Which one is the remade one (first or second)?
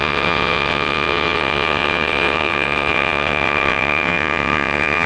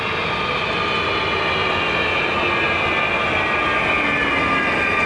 first